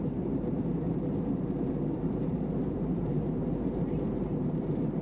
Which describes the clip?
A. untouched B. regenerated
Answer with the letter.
B